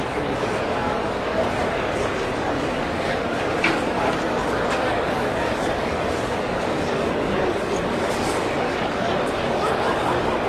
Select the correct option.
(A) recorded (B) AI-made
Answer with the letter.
B